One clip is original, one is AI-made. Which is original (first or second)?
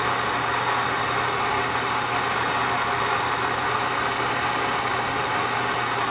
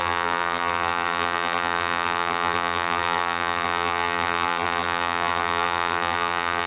first